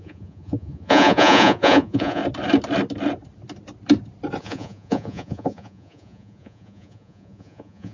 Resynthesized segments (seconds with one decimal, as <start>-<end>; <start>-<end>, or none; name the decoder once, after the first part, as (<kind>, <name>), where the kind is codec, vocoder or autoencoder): 0.0-2.2 (vocoder, Vocos); 4.4-7.9